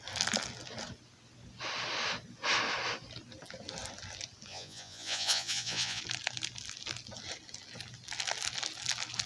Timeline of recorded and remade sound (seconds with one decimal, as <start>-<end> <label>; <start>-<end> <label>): 0.0-4.5 recorded; 4.5-6.0 remade; 6.0-9.3 recorded